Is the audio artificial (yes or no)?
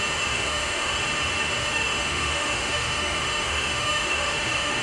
yes